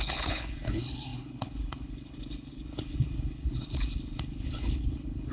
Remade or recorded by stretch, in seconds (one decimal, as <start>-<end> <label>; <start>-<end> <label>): 0.0-5.3 remade